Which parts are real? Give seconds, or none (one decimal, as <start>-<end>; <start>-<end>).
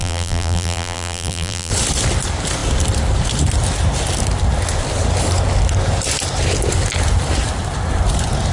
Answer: 1.7-8.5